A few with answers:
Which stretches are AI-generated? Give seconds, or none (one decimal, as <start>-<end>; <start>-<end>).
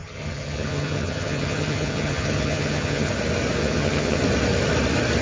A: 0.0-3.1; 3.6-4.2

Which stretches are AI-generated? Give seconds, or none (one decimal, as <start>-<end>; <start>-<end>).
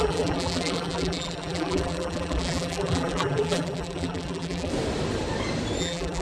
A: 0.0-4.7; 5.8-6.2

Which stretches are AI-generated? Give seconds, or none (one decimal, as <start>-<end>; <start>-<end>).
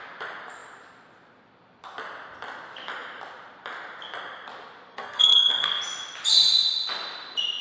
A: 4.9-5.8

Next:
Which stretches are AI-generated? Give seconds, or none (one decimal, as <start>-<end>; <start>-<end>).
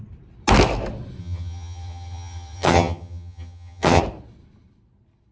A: 1.2-4.0